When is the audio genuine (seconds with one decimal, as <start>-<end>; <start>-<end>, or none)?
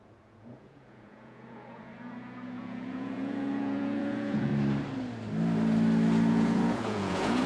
4.5-6.3